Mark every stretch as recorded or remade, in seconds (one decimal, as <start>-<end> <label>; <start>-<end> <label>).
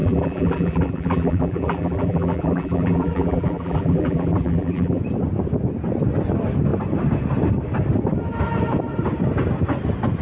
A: 0.0-5.0 remade; 5.0-10.2 recorded